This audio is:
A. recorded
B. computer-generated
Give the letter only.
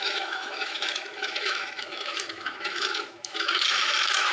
B